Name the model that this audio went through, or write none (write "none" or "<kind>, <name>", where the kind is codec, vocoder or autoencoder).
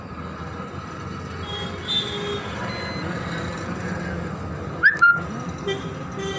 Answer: none